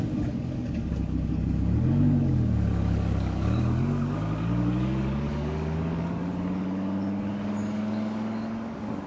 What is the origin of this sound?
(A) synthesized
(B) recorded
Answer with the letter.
A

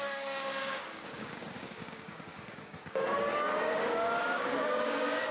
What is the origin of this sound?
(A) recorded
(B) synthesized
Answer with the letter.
B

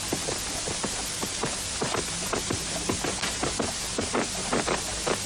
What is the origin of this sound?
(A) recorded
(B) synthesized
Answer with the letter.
A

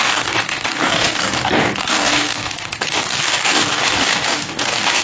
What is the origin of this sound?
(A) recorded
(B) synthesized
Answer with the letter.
B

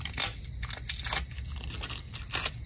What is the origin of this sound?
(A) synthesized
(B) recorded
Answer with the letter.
B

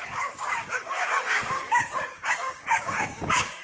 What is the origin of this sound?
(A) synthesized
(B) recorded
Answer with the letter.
A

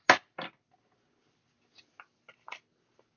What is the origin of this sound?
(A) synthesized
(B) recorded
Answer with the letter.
B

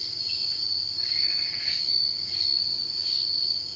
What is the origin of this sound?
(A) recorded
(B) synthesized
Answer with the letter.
B